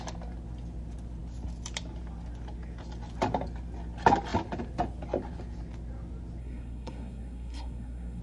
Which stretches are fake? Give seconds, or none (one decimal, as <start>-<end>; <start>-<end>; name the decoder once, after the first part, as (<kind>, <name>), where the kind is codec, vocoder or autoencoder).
6.4-8.2 (codec, SNAC)